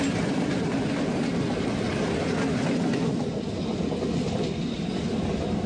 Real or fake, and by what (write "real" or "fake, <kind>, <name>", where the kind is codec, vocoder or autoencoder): real